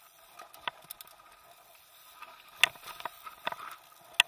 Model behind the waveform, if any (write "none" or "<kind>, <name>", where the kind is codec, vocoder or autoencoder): none